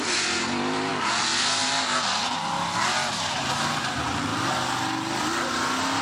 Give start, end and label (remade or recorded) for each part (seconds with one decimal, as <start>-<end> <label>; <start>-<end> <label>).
0.0-0.9 remade; 0.9-3.8 recorded; 3.8-4.3 remade; 4.3-5.3 recorded; 5.3-6.0 remade